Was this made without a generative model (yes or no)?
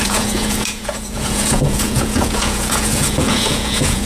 no